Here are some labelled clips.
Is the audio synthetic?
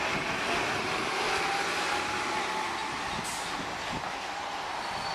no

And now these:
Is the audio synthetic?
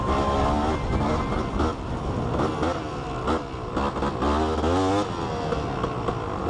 no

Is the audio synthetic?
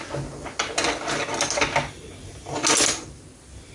no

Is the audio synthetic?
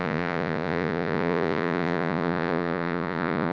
yes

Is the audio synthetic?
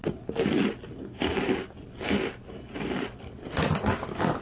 no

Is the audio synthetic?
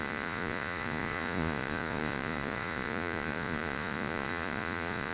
yes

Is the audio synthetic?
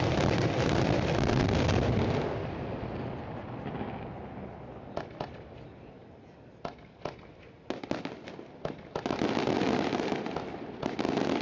no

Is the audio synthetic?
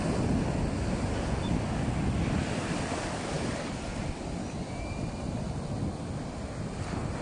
no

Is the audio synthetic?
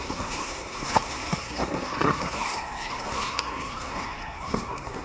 yes